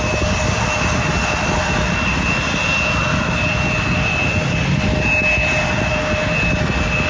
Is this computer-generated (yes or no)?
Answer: no